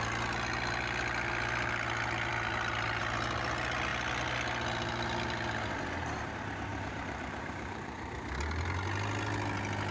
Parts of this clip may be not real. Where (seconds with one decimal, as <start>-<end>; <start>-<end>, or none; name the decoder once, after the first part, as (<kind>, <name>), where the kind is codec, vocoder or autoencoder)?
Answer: 6.7-8.1 (vocoder, BigVGAN v2)